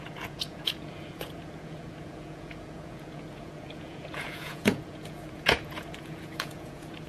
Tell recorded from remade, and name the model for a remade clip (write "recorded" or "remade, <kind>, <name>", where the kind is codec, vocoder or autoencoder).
remade, vocoder, Vocos